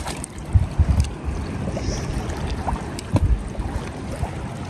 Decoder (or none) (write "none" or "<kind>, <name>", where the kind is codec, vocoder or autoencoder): none